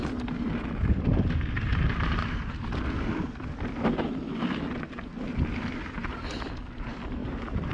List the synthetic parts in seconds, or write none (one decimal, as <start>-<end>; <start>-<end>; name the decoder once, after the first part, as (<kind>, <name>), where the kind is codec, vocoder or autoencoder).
1.7-2.5 (vocoder, BigVGAN v2); 7.2-7.7